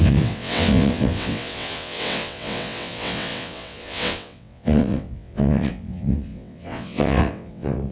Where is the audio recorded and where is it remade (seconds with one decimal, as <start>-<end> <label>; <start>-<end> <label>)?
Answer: 0.0-7.9 remade